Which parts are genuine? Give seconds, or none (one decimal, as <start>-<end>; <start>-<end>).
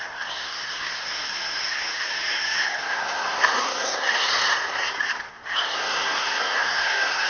none